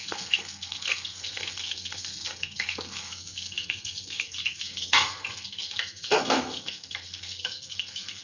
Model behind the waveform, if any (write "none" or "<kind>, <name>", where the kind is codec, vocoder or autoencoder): codec, SNAC